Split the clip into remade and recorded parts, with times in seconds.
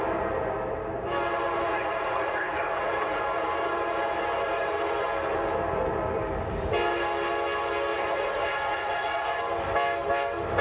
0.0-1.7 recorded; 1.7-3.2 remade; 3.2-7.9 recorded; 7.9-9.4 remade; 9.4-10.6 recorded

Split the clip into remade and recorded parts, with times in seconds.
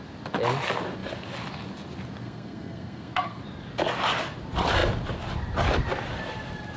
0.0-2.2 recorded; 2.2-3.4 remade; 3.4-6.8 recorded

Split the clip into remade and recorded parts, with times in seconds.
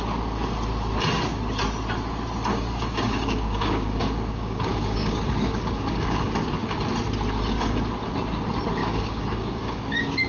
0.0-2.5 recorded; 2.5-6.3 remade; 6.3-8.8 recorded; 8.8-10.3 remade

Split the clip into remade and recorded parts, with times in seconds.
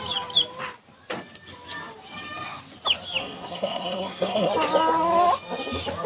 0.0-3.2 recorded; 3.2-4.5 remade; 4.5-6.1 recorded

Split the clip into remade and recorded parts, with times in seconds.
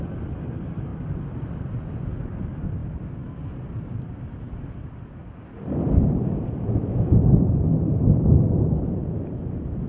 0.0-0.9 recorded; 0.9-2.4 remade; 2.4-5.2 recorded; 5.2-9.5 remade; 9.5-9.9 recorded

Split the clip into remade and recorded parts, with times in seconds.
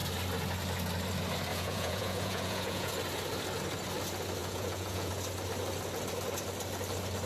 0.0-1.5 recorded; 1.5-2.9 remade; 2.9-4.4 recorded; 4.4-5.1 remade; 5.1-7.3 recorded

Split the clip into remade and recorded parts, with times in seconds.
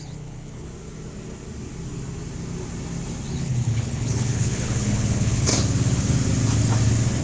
0.0-0.7 remade; 0.7-3.3 recorded; 3.3-5.5 remade; 5.5-7.2 recorded